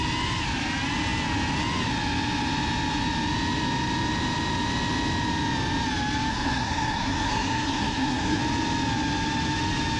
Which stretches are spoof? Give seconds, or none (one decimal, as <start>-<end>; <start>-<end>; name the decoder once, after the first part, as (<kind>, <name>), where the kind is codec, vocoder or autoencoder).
6.3-8.4 (codec, SNAC)